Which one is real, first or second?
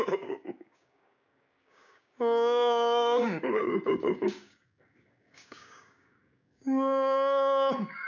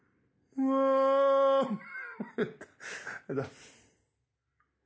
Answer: second